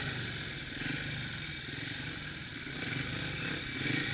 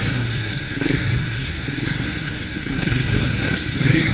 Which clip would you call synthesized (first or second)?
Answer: second